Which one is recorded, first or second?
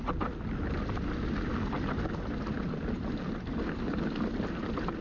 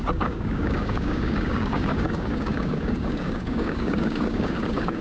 first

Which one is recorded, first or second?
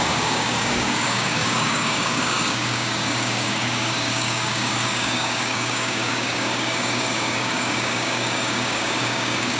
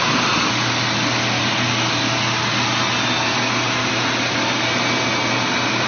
second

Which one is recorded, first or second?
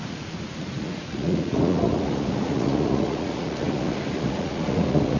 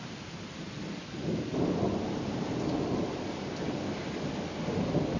second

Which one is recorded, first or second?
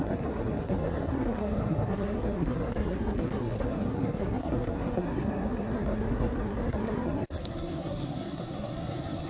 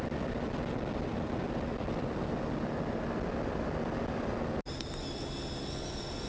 second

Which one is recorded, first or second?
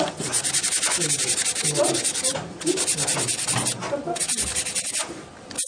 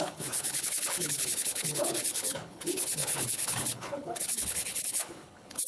first